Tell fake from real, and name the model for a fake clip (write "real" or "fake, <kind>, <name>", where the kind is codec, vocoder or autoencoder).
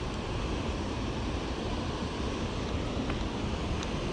real